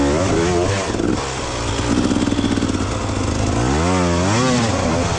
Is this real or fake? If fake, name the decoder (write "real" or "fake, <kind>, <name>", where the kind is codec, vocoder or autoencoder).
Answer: real